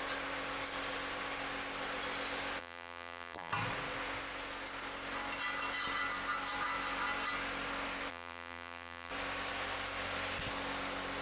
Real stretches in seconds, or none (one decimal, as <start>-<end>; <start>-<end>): 0.0-2.6; 3.5-8.1; 9.1-11.2